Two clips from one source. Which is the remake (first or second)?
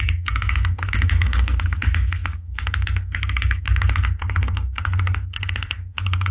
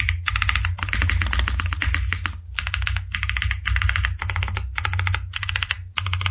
first